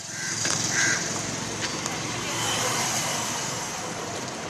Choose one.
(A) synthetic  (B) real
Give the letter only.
A